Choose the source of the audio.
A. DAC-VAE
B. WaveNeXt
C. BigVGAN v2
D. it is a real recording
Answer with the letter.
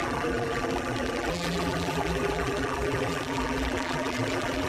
C